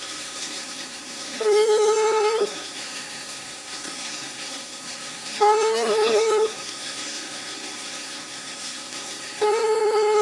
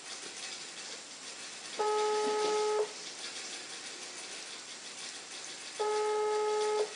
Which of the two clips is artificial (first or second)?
first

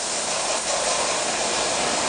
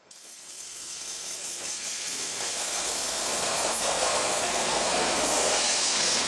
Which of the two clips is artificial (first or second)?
second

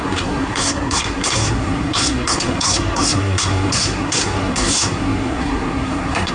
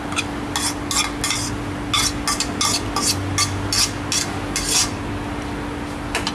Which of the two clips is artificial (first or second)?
first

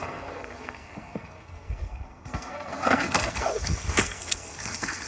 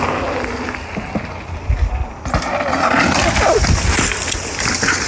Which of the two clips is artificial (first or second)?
first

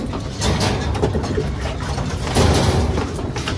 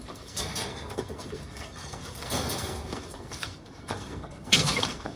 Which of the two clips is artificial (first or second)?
second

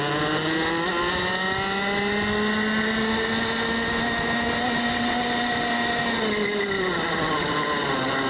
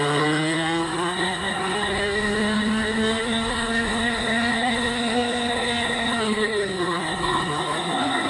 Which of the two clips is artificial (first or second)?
second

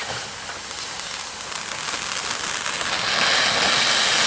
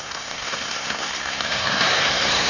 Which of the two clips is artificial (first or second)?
second